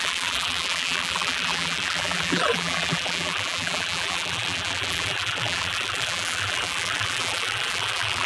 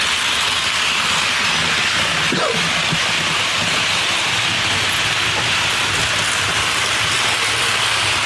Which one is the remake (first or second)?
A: first